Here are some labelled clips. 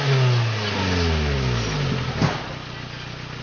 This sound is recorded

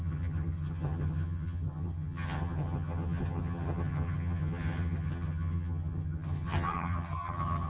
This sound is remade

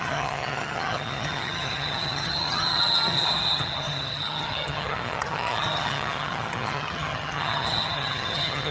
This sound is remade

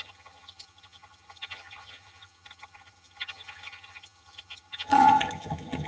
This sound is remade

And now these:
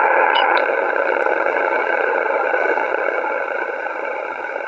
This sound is remade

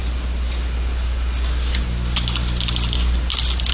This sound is recorded